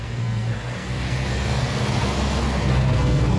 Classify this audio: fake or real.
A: fake